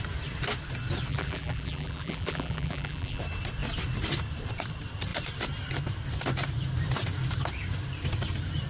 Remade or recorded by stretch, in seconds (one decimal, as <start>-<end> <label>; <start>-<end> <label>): 0.0-1.1 recorded; 1.1-3.2 remade; 3.2-8.7 recorded